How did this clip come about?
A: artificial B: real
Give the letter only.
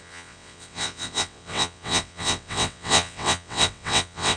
A